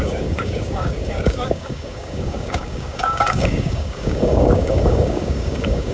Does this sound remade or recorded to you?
remade